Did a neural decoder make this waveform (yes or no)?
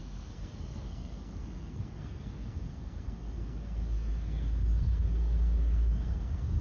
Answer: yes